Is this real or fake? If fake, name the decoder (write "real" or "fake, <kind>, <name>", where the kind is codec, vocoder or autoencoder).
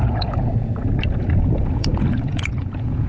fake, vocoder, Vocos